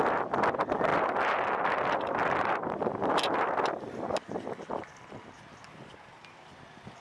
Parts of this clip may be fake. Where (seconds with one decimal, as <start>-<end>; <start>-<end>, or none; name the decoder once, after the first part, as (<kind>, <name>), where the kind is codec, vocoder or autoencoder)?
none